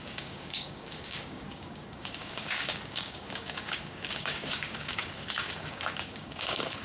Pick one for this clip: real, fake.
fake